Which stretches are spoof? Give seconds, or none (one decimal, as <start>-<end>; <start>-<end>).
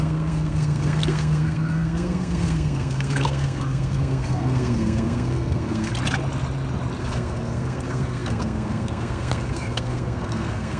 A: 0.0-5.9; 7.0-10.8